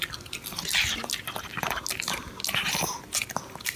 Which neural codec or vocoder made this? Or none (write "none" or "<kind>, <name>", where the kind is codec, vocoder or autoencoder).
none